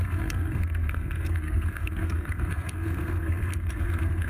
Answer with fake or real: fake